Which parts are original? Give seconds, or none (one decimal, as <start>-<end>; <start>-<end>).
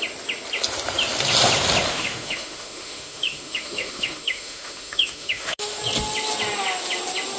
0.0-1.9; 5.8-7.4